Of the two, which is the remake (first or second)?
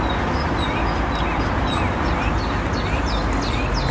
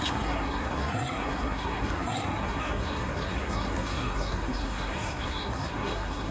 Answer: second